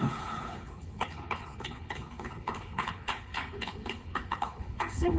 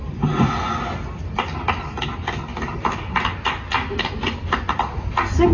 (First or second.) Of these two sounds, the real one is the second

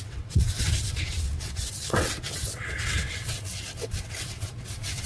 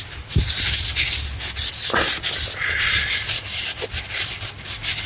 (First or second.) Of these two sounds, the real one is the second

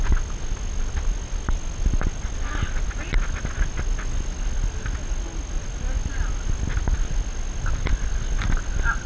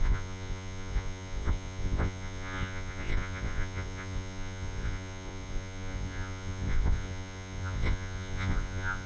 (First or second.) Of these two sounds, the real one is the first